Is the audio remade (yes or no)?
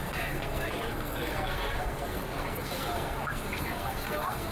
yes